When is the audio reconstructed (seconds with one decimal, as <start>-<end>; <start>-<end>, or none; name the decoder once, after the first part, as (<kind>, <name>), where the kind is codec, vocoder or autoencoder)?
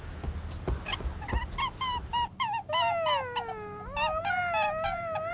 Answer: none